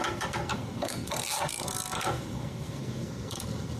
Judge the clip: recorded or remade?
remade